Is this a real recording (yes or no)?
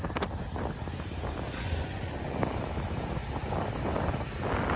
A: yes